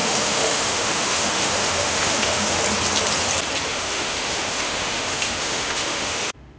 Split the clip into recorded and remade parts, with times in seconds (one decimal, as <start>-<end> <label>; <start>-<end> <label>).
0.0-2.6 remade; 2.6-3.7 recorded; 3.7-6.6 remade